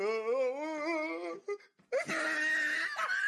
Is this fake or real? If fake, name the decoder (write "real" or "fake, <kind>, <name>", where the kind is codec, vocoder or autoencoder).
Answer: real